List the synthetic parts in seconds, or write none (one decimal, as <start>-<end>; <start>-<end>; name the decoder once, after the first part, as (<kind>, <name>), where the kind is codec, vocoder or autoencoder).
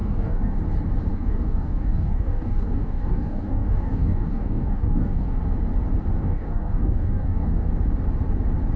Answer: 0.0-0.6 (codec, DAC); 1.1-5.4; 6.2-7.7